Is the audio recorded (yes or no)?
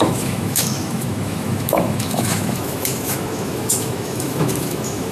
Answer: no